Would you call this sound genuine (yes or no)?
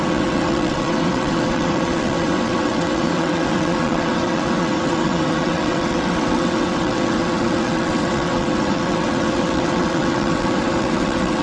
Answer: no